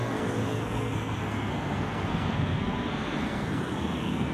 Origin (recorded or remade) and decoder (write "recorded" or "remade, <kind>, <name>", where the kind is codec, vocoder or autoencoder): remade, codec, SNAC